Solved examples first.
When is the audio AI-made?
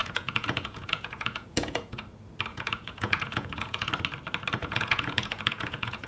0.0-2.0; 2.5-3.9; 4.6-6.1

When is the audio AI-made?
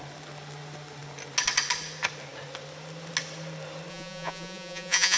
3.9-5.2